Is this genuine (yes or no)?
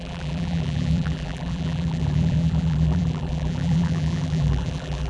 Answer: no